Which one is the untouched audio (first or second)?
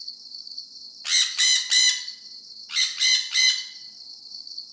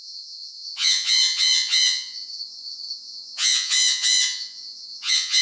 first